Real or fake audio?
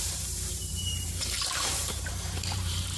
fake